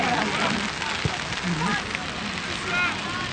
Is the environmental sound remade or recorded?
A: recorded